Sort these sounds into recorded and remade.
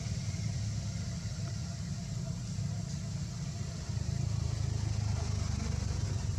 recorded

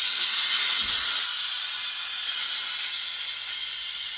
recorded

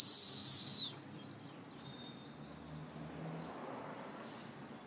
recorded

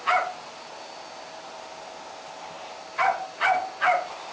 recorded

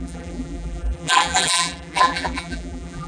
remade